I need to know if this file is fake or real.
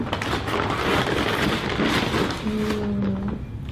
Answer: real